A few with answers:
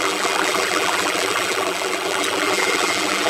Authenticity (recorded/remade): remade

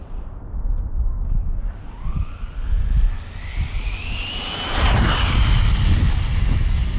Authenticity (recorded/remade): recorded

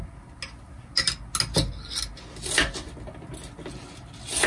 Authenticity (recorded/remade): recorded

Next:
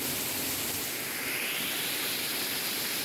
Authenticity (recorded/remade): recorded